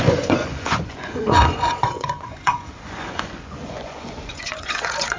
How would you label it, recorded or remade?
remade